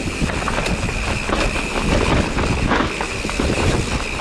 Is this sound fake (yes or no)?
no